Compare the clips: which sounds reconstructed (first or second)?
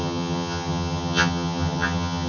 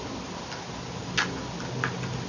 first